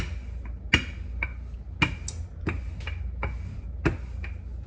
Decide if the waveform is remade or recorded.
recorded